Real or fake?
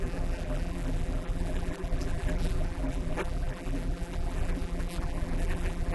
fake